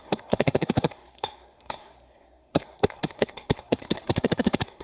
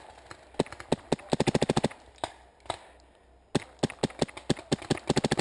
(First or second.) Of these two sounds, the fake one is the first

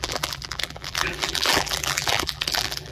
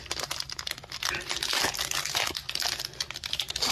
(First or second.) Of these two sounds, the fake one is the first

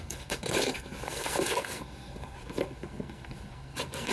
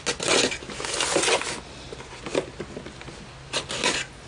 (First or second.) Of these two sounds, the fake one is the first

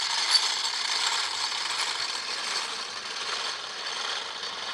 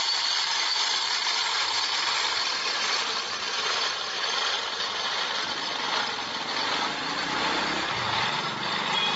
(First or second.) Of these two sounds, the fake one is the second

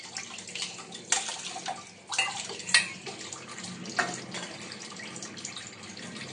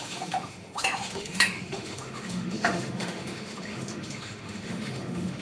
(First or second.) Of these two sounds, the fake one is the second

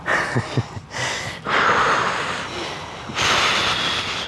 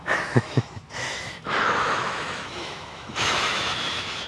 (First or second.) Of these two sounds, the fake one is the second